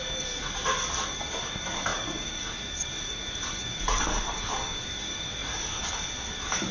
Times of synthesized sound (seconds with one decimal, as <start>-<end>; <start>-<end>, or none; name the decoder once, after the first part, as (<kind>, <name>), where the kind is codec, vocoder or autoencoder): 0.0-6.7 (codec, DAC)

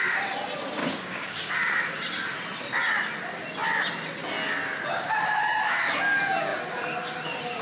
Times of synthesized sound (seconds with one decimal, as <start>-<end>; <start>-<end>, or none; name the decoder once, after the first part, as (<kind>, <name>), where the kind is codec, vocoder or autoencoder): 0.8-1.5 (codec, DAC)